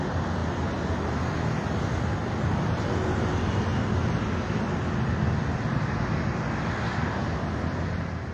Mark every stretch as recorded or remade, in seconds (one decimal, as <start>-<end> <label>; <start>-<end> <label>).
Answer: 0.0-8.3 recorded

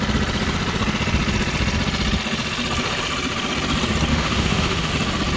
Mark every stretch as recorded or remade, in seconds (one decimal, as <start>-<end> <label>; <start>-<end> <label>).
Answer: 0.0-4.1 recorded; 4.1-4.9 remade; 4.9-5.4 recorded